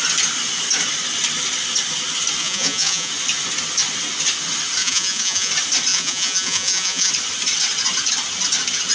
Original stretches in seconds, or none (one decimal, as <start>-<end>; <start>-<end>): 0.0-2.4; 3.1-4.8; 5.5-5.9; 7.1-8.9